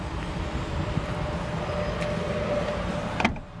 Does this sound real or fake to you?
real